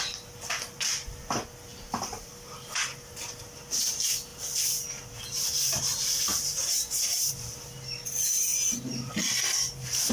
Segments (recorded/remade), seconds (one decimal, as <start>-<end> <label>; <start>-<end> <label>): 0.0-1.7 recorded; 1.7-2.3 remade; 2.3-5.9 recorded; 5.9-7.3 remade; 7.3-8.5 recorded; 8.5-9.1 remade; 9.1-10.1 recorded